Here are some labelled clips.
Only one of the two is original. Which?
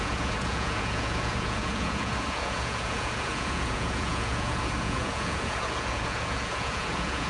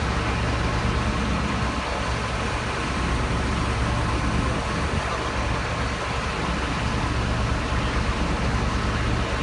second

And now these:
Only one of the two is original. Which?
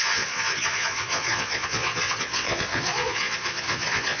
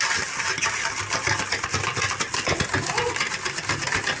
second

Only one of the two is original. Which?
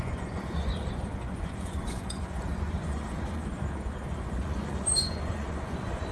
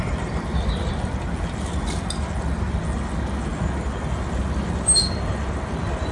second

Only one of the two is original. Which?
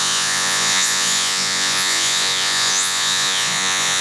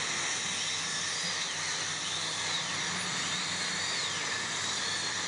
second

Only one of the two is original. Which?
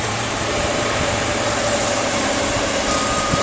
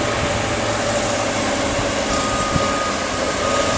second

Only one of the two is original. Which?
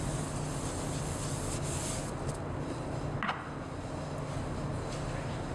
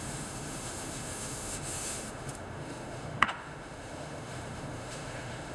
first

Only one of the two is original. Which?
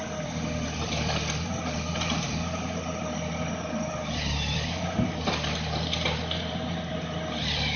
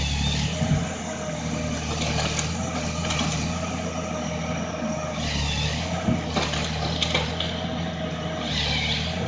second